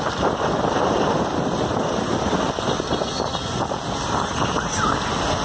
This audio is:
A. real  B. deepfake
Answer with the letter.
A